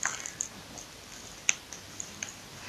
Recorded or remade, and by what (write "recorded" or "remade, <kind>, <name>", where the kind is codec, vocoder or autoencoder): recorded